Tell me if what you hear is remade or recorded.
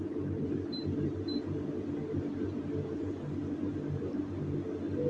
recorded